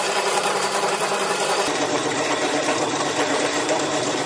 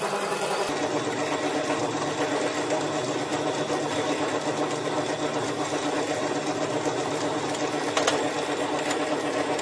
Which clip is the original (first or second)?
second